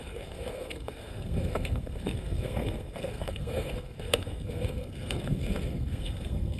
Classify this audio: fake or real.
fake